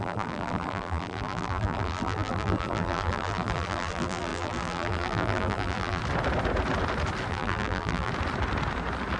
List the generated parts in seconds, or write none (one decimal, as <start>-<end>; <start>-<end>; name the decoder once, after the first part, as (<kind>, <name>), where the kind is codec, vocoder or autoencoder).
0.0-6.0 (vocoder, BigVGAN v2); 7.3-8.1